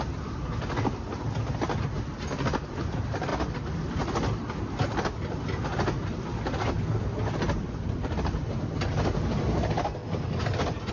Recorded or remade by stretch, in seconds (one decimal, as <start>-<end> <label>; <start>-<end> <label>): 0.0-10.9 recorded